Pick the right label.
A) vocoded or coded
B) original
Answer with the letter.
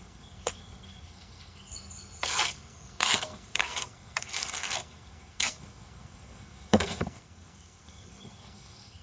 A